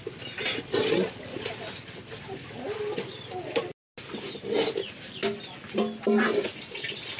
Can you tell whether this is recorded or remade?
recorded